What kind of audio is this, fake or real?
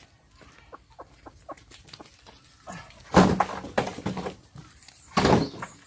real